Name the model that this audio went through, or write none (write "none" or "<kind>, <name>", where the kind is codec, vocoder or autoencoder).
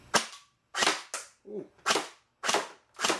none